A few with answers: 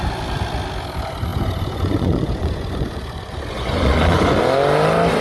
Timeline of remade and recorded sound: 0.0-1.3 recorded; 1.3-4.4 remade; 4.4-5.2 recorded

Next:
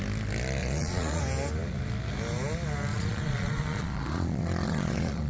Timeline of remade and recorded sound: 0.0-0.6 recorded; 0.6-1.2 remade; 1.2-2.9 recorded; 2.9-5.3 remade

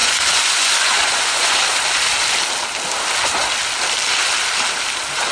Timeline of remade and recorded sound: 0.0-1.6 remade; 1.6-5.3 recorded

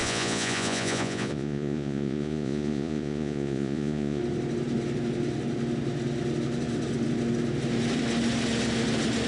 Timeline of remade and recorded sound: 0.0-4.2 remade; 4.2-9.3 recorded

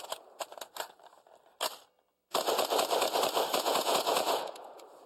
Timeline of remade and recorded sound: 0.0-0.4 remade; 0.4-3.5 recorded; 3.5-5.1 remade

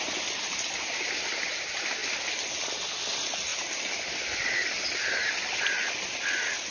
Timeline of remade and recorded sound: 0.0-6.7 recorded